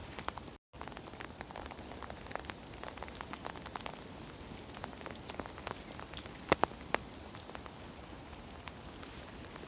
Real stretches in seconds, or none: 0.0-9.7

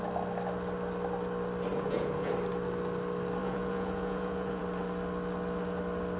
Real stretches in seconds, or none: 0.0-1.7; 2.3-3.4; 4.6-6.2